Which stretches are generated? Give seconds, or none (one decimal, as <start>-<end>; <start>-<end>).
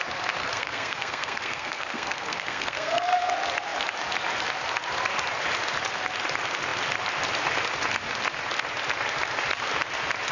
0.4-3.3